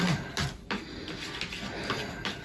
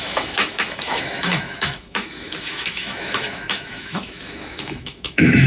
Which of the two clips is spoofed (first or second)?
second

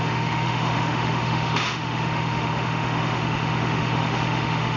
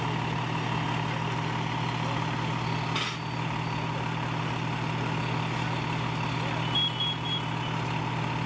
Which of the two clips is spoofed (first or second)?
first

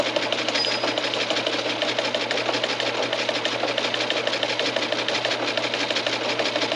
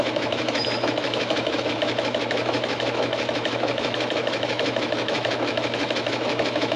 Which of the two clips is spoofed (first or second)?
second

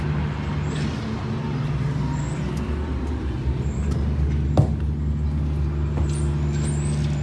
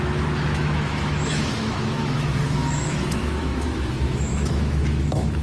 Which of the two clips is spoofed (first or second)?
second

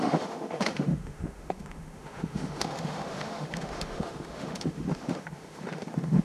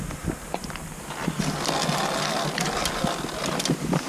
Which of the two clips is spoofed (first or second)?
first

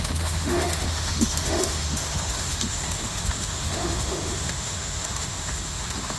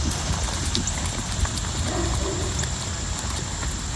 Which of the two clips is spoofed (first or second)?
first